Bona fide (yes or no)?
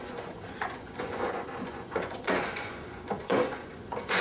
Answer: no